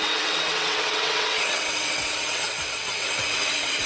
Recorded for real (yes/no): no